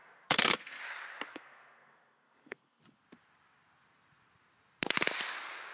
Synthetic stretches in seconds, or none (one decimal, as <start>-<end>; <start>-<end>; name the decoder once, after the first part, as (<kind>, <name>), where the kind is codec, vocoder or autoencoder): 0.0-0.8 (codec, SNAC); 1.3-2.8

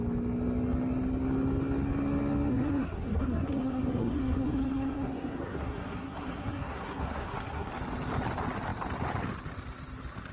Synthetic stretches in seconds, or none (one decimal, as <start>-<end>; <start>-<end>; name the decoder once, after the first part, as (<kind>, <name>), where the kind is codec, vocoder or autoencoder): 2.5-7.7 (codec, SNAC)

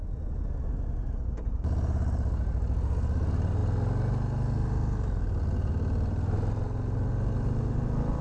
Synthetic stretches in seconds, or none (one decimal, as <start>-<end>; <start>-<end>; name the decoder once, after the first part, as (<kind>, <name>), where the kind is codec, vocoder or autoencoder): none

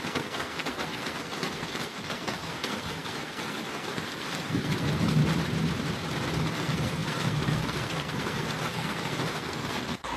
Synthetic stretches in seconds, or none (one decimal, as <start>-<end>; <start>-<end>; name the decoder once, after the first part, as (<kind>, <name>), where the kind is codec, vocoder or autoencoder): 0.0-5.2 (codec, SNAC); 6.5-10.2